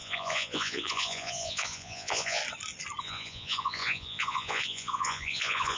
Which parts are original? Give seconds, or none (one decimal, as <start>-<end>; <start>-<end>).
2.4-3.0